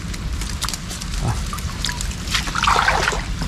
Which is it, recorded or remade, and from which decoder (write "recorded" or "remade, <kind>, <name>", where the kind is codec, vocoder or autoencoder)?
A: recorded